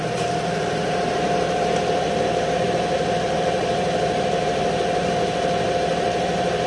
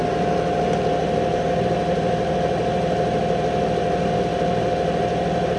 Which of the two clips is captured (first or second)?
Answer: second